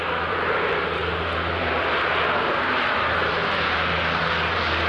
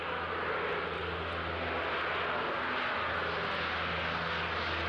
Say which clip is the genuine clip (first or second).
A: second